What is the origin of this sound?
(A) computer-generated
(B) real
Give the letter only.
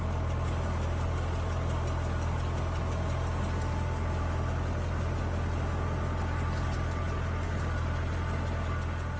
B